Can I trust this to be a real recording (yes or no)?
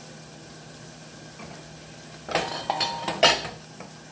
yes